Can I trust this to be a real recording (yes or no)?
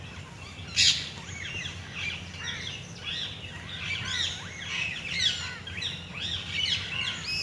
yes